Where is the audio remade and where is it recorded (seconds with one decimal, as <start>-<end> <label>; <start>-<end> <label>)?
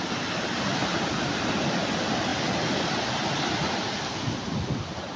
0.0-5.2 recorded